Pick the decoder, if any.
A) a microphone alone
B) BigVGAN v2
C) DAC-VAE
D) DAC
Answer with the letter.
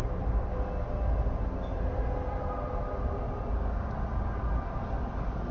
A